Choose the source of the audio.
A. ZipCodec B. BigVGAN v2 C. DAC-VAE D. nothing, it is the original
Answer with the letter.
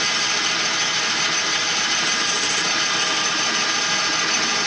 D